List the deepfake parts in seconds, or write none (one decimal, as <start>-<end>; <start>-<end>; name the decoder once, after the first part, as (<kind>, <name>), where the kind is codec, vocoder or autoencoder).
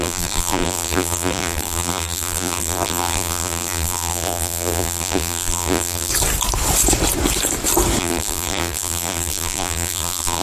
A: 0.0-6.1 (vocoder, BigVGAN v2); 8.0-10.4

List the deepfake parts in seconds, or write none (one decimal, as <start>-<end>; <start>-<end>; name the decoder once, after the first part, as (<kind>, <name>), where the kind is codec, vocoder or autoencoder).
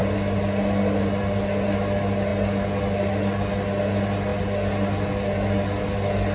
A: none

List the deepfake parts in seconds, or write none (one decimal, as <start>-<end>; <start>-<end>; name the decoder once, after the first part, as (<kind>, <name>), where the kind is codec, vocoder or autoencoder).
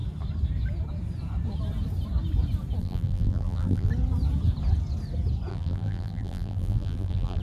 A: 2.8-3.9 (vocoder, BigVGAN v2); 5.5-7.4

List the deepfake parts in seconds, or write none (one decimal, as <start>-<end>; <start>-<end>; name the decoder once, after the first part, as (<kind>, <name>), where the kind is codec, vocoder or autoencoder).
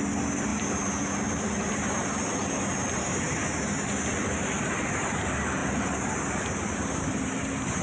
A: none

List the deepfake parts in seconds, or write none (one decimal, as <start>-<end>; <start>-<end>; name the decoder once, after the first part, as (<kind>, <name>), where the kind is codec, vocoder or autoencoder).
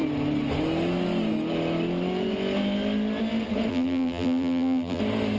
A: 3.7-5.0 (vocoder, BigVGAN v2)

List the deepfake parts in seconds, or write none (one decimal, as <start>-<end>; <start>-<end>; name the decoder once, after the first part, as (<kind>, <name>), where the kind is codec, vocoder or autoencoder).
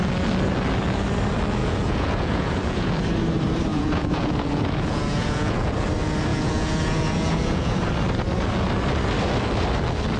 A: 1.6-2.9 (vocoder, Vocos); 3.7-5.7; 6.3-7.9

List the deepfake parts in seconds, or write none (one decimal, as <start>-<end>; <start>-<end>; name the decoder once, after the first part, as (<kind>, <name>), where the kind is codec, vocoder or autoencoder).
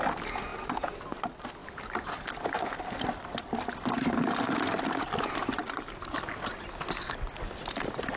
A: 1.6-6.3 (vocoder, BigVGAN v2)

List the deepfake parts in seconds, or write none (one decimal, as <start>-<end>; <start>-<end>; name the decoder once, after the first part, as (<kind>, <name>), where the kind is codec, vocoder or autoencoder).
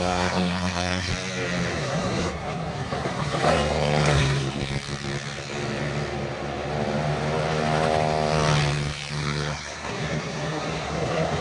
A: 0.0-1.1 (codec, SNAC); 1.7-4.6; 9.1-11.4